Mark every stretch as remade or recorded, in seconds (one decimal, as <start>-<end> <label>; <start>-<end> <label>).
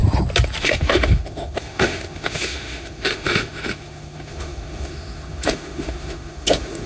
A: 0.0-0.6 recorded; 0.6-6.9 remade